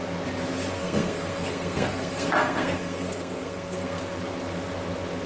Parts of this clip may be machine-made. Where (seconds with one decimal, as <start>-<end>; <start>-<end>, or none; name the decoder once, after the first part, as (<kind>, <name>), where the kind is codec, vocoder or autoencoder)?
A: 0.8-4.0 (codec, SNAC)